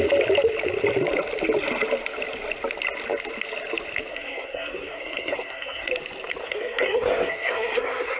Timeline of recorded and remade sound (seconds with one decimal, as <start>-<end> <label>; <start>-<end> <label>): 0.0-4.1 recorded; 4.1-5.9 remade; 5.9-6.4 recorded; 6.4-8.2 remade